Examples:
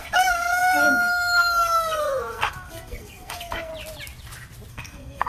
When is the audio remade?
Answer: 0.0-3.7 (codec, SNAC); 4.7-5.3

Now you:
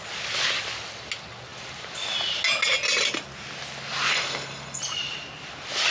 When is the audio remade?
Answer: 4.1-4.8 (codec, SNAC)

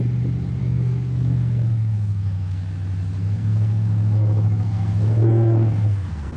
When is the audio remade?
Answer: 0.6-2.7 (codec, SNAC); 3.2-6.4